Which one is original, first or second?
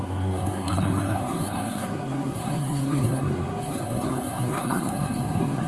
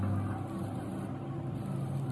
second